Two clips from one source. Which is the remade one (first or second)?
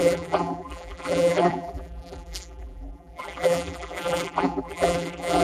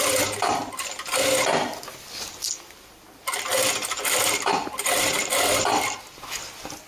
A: first